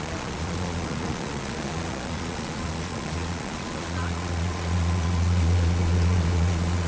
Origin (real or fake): fake